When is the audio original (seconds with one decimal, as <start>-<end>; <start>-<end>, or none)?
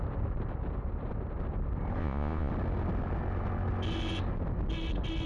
0.0-2.0; 2.5-5.3